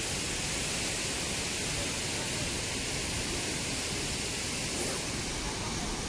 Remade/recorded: recorded